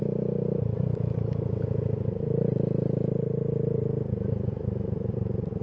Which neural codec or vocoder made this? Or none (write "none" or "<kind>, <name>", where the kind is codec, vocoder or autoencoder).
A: vocoder, BigVGAN v2